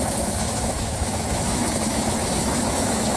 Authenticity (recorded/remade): remade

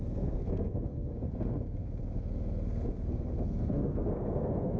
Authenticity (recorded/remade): remade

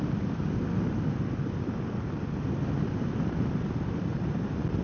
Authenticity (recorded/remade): recorded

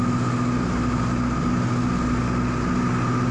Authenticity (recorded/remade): recorded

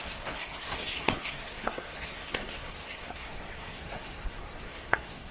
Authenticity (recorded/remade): remade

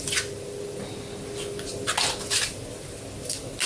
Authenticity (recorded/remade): recorded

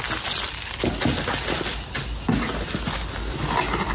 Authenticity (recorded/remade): recorded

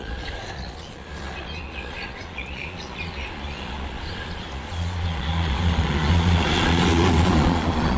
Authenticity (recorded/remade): remade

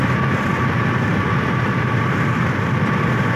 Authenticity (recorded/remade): recorded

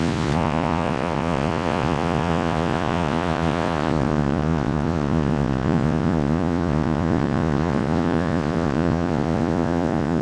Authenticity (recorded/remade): remade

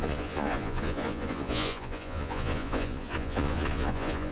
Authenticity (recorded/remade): remade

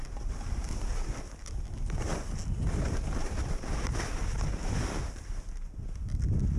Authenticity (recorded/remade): recorded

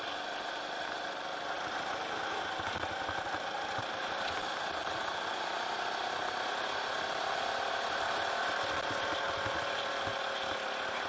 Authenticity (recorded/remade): recorded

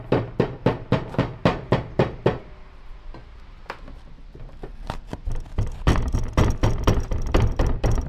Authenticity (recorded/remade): recorded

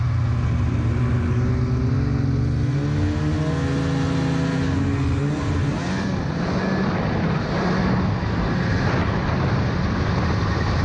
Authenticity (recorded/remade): recorded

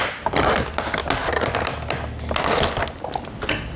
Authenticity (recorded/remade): recorded